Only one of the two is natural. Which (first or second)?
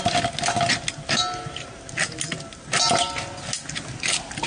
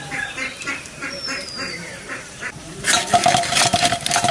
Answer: first